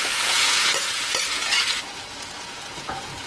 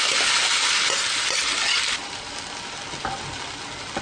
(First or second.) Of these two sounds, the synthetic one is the first